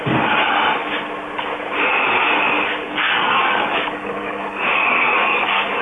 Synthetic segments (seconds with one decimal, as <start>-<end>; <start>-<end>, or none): 2.8-5.8